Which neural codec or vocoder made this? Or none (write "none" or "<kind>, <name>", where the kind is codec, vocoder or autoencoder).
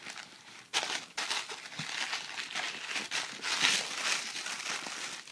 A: none